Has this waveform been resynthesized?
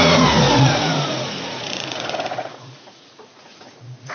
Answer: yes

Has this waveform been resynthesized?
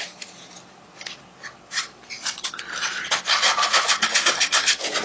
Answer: no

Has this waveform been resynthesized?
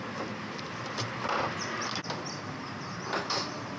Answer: no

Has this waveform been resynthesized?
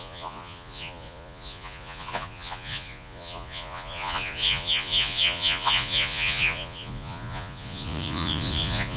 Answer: yes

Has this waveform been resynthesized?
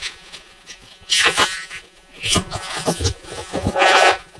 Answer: yes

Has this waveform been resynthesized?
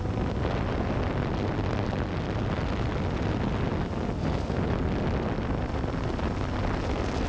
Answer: no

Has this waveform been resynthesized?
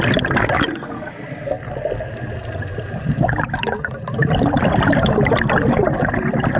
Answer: no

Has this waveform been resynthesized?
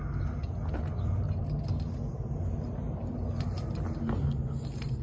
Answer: no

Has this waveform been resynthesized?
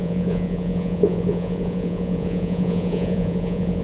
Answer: yes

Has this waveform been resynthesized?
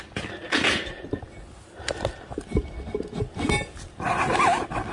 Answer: no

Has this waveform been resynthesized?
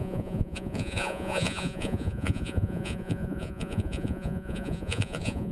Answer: yes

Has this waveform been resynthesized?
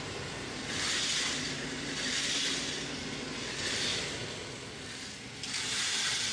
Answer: no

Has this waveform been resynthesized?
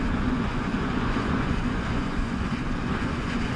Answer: yes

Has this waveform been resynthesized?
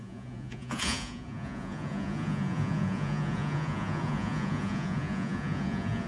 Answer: yes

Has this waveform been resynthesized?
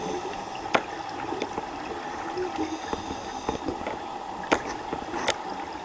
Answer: no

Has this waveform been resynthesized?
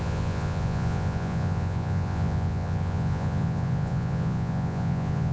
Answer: yes